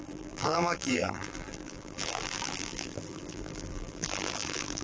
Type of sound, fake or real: fake